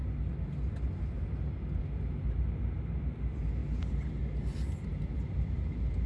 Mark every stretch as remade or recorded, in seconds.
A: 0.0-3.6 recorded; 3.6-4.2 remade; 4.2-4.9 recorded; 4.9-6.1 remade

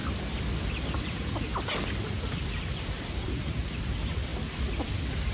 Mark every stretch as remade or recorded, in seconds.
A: 0.0-0.6 recorded; 0.6-1.5 remade; 1.5-2.0 recorded; 2.0-5.3 remade

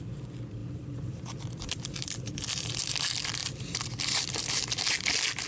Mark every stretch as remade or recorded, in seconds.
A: 0.0-0.6 recorded; 0.6-3.0 remade; 3.0-3.4 recorded; 3.4-4.8 remade; 4.8-5.5 recorded

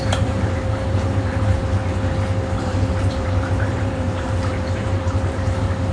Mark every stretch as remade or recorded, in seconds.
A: 0.0-1.6 remade; 1.6-2.6 recorded; 2.6-5.9 remade